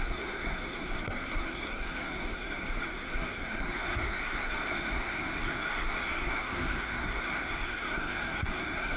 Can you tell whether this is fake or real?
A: fake